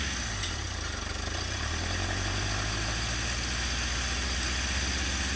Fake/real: real